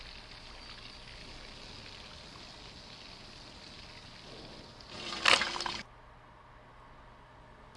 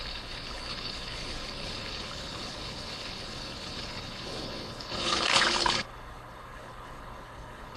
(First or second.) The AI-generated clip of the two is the second